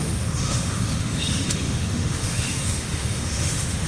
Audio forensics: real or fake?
fake